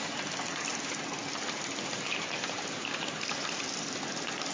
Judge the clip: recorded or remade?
recorded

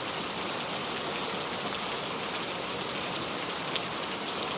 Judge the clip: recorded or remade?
recorded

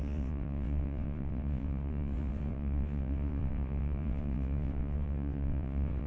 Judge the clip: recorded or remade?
remade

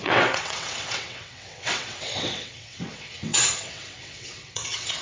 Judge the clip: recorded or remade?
remade